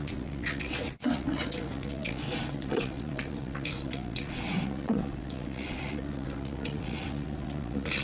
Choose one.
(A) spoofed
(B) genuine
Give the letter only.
A